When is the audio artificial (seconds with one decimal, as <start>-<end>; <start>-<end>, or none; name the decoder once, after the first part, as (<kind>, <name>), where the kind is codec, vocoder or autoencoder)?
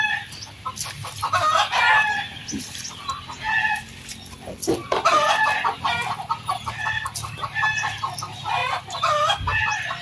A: none